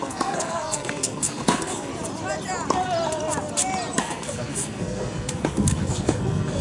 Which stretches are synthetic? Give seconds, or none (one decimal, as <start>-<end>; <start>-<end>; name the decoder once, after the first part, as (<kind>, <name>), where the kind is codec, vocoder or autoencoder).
0.0-1.9 (codec, SNAC); 4.0-6.6